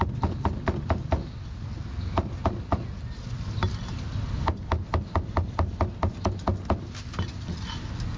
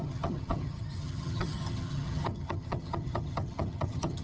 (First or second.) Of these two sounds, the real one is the first